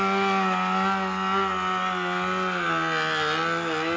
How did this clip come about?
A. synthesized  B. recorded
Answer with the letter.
B